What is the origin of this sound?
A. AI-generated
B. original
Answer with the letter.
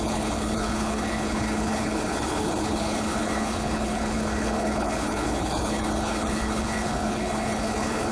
A